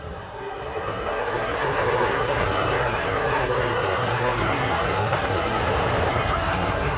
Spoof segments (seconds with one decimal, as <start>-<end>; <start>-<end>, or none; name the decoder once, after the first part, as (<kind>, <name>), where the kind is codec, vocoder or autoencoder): 0.0-5.6 (codec, SNAC); 6.1-7.0